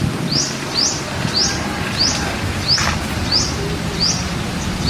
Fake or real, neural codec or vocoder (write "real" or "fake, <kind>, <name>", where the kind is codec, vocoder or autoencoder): fake, vocoder, BigVGAN v2